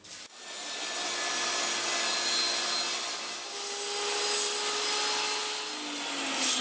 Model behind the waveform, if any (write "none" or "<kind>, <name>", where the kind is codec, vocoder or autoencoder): none